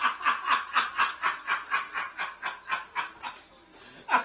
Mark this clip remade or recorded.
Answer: recorded